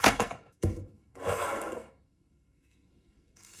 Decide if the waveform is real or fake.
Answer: fake